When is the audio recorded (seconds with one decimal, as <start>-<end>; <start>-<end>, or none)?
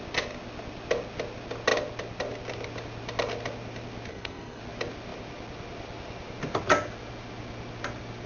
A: 0.0-4.1; 4.6-8.3